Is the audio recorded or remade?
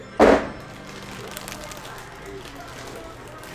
recorded